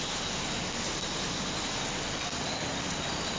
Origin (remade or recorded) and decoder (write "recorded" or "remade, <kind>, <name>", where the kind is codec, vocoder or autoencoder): recorded